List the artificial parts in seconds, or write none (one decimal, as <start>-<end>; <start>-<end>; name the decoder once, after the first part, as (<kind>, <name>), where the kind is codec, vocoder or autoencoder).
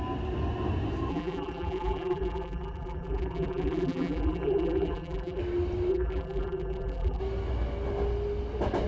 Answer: 1.1-5.4 (vocoder, BigVGAN v2); 5.9-7.2